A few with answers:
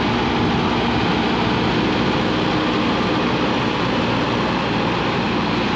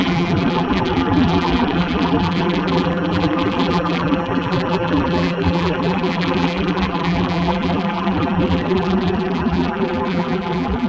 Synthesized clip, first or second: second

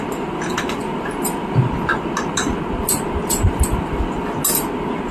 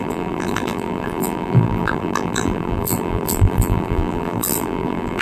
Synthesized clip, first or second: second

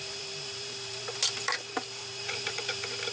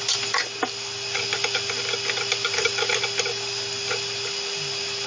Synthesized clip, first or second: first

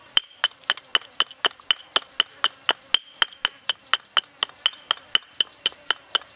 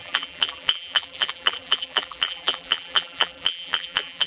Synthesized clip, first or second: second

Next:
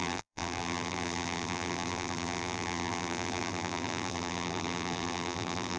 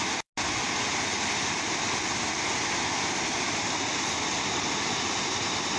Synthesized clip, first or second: first